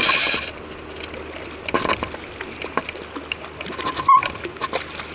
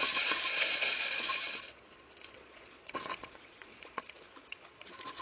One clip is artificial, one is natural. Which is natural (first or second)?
first